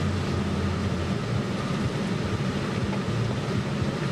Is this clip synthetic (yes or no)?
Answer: no